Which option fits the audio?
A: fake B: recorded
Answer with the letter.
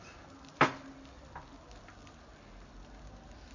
B